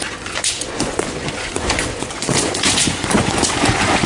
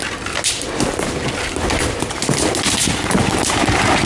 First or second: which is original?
second